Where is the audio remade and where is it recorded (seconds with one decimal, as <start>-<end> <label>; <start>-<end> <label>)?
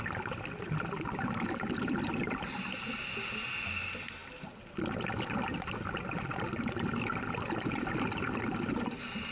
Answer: 0.0-9.3 recorded